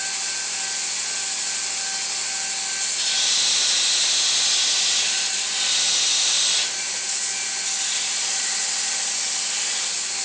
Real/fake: real